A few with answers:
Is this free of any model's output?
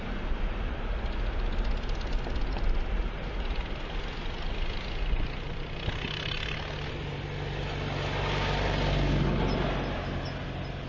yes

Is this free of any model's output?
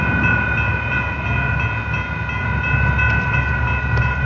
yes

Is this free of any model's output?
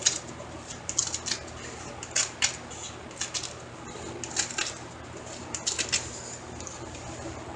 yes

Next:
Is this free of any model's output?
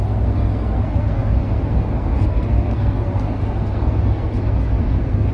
no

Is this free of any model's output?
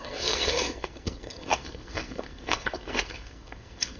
no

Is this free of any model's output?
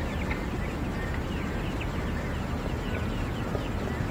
yes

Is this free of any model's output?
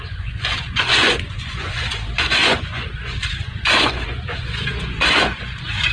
no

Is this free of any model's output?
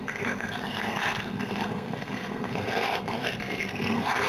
no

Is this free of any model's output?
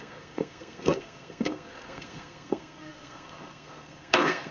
no